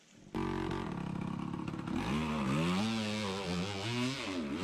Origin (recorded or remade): recorded